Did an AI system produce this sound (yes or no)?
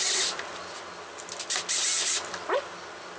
no